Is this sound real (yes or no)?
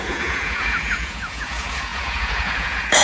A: no